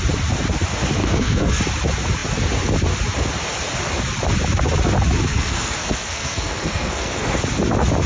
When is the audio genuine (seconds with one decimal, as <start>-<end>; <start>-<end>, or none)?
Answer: 0.0-1.0; 1.6-5.3; 7.4-8.1